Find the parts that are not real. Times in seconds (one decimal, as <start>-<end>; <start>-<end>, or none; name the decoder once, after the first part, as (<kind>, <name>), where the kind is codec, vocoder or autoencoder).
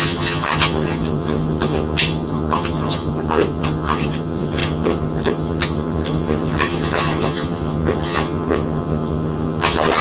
0.0-10.0 (vocoder, HiFi-GAN)